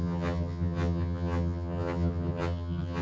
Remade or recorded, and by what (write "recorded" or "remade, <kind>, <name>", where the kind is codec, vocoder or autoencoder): remade, vocoder, HiFi-GAN